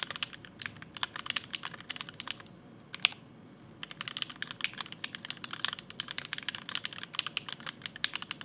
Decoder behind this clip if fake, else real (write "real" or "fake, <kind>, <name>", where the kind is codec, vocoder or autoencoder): real